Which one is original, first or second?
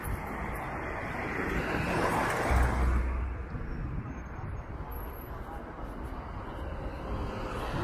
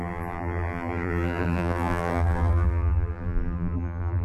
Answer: first